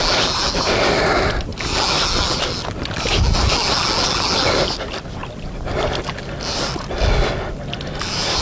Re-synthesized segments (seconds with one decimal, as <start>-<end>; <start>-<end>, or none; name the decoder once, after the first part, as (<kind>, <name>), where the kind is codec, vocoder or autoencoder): none